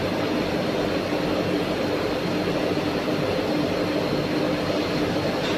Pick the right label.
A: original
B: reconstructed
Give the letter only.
A